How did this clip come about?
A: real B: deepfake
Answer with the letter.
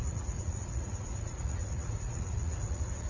B